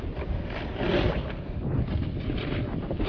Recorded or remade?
recorded